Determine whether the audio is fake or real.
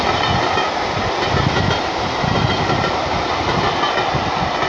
real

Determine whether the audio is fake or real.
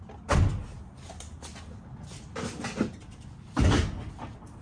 real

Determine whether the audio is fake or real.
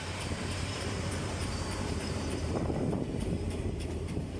fake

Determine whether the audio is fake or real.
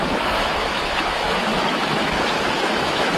fake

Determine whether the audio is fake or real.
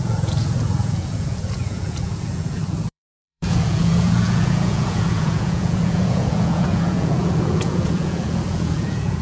fake